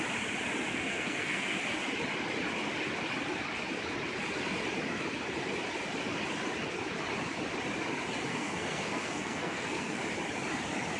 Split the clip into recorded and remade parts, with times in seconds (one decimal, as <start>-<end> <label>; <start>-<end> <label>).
0.0-0.7 recorded; 0.7-1.6 remade; 1.6-8.3 recorded; 8.3-10.0 remade; 10.0-11.0 recorded